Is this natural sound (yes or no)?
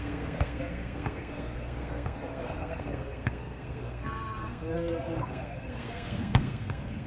no